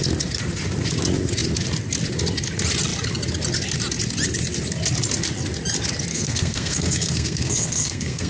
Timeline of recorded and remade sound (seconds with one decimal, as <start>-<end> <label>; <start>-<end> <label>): 0.0-6.1 recorded; 6.1-8.3 remade